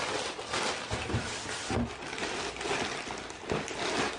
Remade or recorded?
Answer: recorded